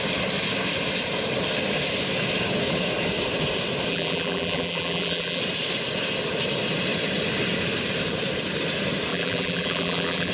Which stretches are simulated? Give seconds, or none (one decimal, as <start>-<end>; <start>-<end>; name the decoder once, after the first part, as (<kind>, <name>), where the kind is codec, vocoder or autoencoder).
3.9-5.4 (vocoder, BigVGAN v2); 9.1-10.3